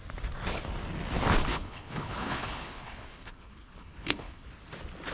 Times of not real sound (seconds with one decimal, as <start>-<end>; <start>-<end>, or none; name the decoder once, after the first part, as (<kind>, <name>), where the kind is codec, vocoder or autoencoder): 1.5-4.5 (codec, HILCodec)